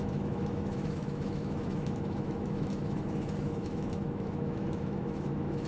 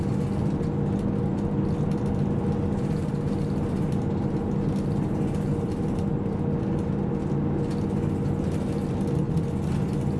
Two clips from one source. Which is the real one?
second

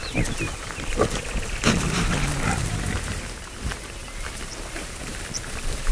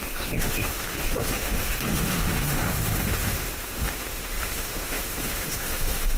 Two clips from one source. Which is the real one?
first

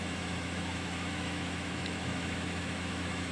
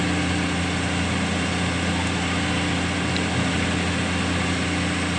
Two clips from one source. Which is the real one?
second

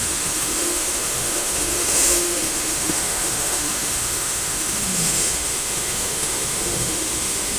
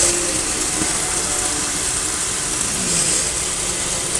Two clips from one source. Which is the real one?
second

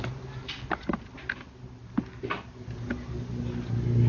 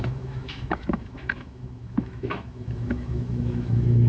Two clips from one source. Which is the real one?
first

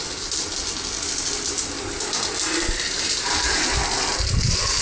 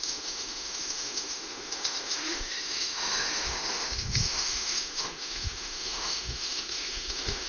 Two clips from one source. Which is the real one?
first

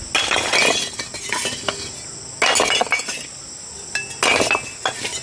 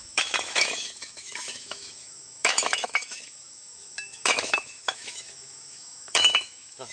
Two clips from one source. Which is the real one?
first